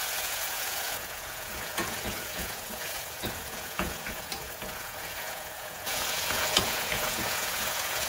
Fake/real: fake